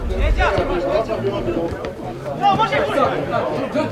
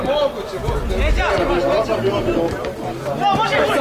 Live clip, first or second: second